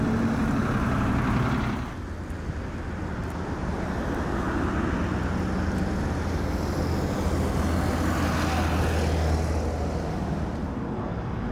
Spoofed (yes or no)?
no